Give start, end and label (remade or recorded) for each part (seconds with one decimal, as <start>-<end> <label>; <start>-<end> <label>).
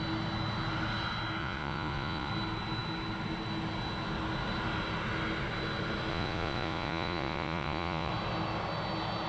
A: 0.0-1.4 recorded; 1.4-2.3 remade; 2.3-6.1 recorded; 6.1-8.1 remade; 8.1-9.3 recorded